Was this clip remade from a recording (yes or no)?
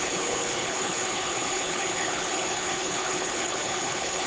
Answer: yes